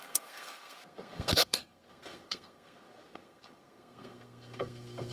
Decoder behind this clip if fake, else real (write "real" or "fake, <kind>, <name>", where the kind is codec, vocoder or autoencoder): fake, codec, SNAC